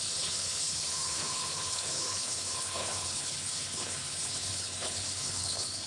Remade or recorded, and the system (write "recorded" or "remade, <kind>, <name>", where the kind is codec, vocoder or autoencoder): remade, codec, HILCodec